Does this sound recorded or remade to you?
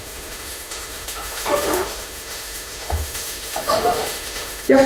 remade